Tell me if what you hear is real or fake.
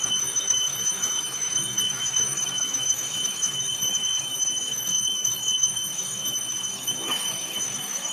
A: fake